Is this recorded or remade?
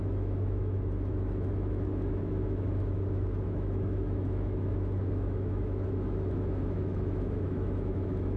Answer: remade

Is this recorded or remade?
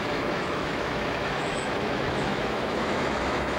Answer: remade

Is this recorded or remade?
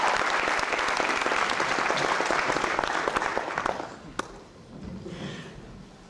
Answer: recorded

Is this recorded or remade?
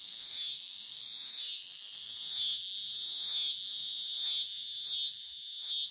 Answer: remade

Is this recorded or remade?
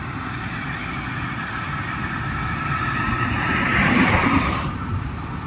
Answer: recorded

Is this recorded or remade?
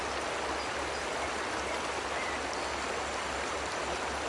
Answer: recorded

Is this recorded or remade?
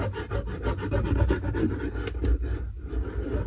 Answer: recorded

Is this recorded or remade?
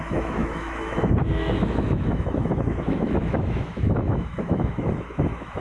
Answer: remade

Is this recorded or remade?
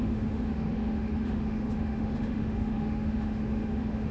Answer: remade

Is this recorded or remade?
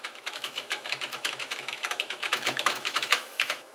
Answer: remade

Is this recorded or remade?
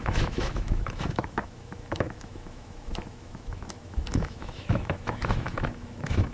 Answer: remade